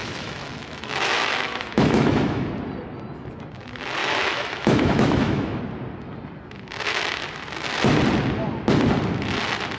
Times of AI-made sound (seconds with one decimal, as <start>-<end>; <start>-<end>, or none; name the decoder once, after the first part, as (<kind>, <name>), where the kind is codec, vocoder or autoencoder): 0.0-2.5 (autoencoder, DAC-VAE); 4.0-5.6